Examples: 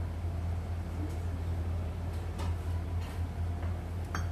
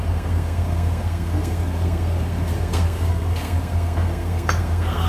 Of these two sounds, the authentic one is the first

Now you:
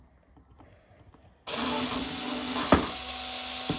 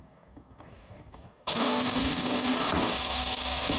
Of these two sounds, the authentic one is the first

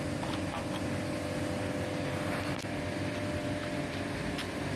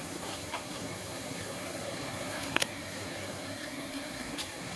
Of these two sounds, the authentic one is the first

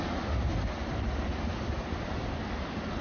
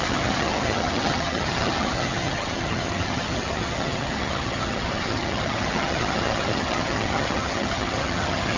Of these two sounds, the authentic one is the first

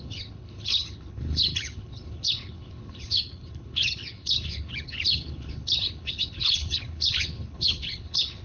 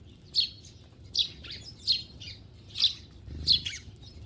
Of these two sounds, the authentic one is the second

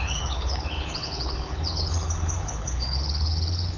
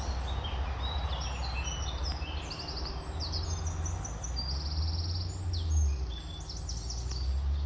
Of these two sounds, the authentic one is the second